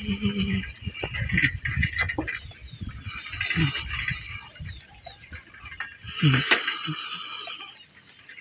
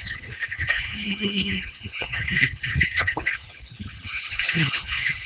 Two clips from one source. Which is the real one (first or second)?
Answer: first